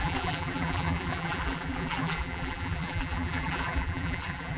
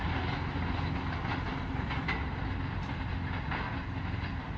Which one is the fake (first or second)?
first